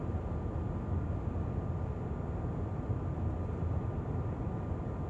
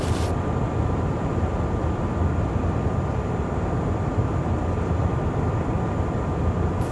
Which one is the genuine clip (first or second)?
first